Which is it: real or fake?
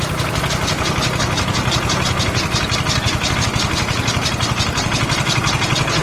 real